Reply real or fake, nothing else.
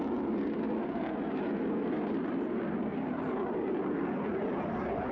real